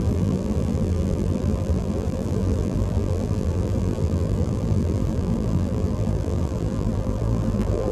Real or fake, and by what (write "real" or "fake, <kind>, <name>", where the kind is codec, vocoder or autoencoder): fake, vocoder, BigVGAN v2